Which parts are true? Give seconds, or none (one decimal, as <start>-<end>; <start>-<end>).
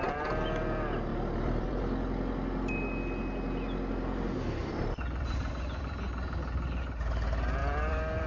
0.0-1.1; 1.8-4.6; 5.9-7.6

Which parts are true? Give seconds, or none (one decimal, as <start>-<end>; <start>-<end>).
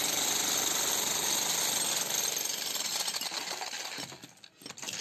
0.0-2.5; 3.0-5.0